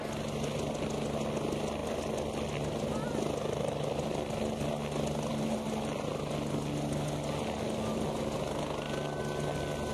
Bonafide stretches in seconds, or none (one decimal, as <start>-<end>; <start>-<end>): 0.0-5.3; 6.1-9.9